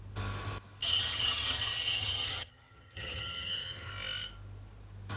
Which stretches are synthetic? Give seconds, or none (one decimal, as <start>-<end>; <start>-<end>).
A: 0.8-3.9